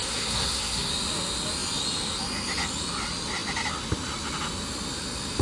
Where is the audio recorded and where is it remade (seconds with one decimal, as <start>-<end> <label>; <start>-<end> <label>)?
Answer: 0.0-0.9 remade; 0.9-5.4 recorded